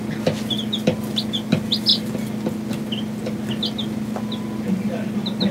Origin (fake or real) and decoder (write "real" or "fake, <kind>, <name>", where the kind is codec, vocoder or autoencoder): real